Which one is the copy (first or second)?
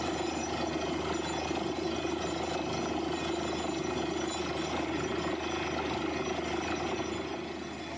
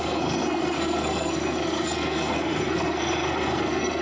second